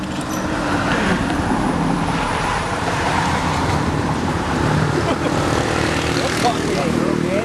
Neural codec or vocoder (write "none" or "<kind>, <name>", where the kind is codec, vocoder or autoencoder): vocoder, BigVGAN v2